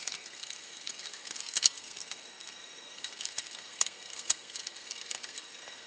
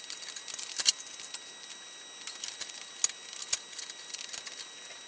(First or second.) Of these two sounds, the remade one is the first